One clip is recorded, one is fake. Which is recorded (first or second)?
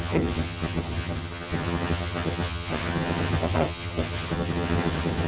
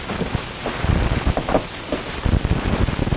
second